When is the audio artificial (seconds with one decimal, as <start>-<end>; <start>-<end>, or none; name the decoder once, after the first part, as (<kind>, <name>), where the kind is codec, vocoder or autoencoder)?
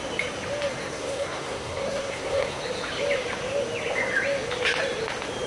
0.8-2.6 (codec, SNAC)